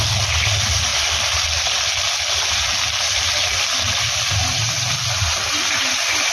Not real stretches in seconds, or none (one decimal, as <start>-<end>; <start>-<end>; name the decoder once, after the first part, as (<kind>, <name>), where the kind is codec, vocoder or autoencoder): none